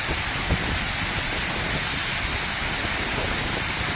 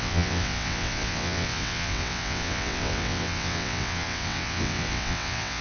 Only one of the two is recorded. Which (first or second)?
first